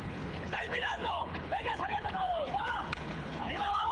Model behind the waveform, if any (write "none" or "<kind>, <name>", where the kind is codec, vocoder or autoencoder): codec, HILCodec